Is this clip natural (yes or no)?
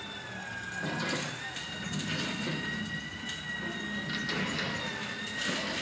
yes